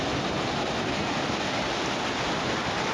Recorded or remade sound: recorded